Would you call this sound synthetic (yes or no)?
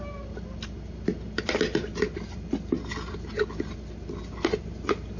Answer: no